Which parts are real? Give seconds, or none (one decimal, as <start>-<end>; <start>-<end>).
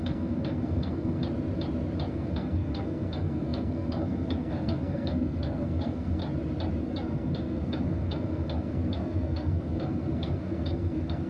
1.2-2.1; 6.2-6.8